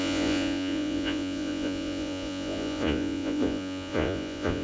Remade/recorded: remade